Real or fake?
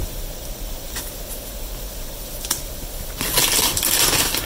fake